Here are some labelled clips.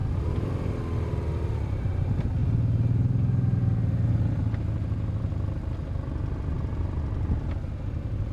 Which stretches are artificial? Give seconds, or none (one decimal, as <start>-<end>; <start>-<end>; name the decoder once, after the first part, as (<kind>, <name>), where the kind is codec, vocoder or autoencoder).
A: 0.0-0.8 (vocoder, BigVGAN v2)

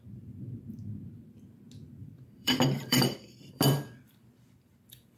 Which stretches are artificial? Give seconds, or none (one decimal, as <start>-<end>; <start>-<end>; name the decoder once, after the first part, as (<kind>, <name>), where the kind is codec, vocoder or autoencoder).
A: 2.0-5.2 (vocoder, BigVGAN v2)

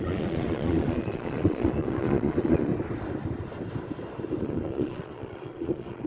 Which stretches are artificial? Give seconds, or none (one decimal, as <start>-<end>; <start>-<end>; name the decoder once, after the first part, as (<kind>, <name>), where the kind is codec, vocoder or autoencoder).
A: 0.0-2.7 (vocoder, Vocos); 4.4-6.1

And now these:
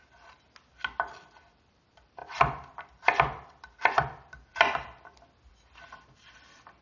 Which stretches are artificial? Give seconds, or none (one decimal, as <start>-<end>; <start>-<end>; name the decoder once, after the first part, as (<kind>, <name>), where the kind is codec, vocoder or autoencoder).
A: 1.4-2.2 (vocoder, BigVGAN v2); 3.8-4.5; 5.5-6.8